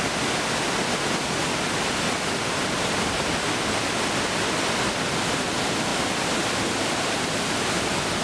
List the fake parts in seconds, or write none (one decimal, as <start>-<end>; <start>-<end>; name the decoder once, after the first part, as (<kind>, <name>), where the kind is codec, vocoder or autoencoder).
none